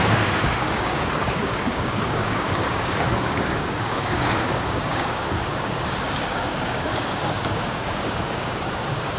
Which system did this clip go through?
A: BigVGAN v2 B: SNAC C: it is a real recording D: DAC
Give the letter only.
D